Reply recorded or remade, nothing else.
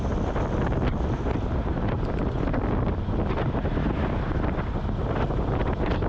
recorded